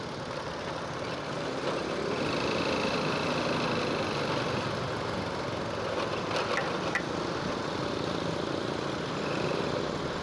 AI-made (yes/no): no